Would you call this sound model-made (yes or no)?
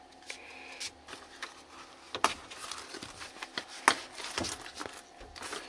no